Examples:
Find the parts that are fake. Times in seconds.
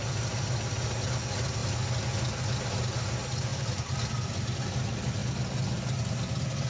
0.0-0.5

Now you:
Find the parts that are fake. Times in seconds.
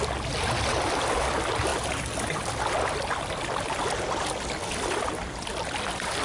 none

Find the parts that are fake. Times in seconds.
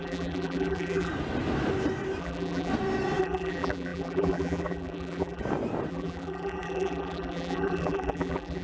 0.0-1.1; 2.2-2.7; 3.2-5.4; 5.9-8.6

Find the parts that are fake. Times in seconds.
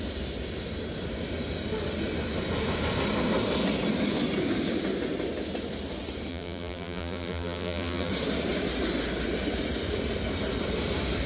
6.3-8.1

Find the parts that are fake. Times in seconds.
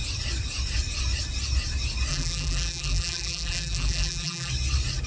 2.1-4.5